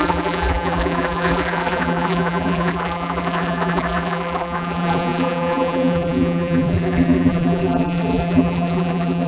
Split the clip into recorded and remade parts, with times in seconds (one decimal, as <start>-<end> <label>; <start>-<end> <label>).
0.0-9.3 remade